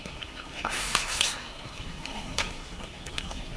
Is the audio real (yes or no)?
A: no